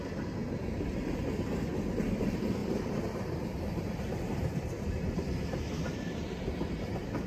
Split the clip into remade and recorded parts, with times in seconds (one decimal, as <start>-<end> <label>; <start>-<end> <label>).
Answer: 0.0-2.6 recorded; 2.6-7.3 remade